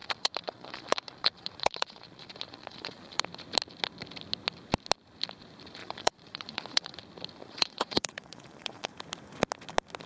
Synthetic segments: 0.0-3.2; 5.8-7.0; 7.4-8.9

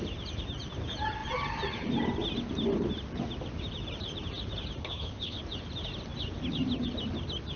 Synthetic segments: 4.8-5.4

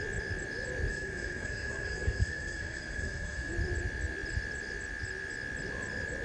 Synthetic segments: 0.9-3.5

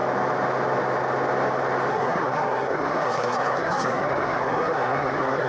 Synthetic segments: 1.9-5.5

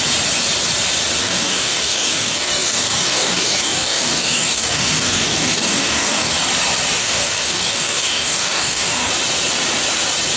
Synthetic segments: 1.2-6.3; 7.0-9.1